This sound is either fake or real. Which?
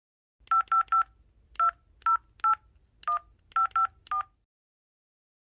real